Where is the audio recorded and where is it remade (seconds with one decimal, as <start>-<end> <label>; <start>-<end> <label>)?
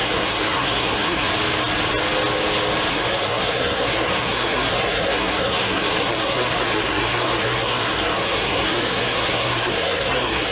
0.0-1.3 remade; 1.3-2.9 recorded; 2.9-10.5 remade